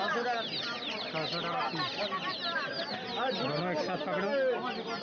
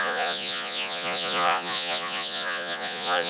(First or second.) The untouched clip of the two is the first